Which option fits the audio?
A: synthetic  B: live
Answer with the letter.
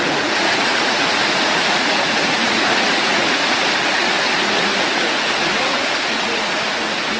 A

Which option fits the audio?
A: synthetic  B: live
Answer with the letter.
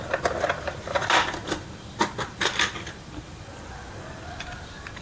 B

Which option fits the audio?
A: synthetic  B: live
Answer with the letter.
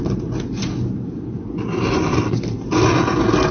B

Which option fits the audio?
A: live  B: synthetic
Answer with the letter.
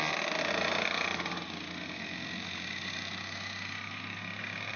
A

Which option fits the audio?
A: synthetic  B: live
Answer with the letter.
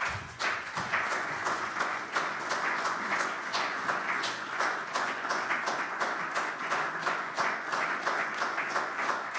A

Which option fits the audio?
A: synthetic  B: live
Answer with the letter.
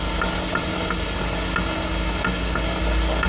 B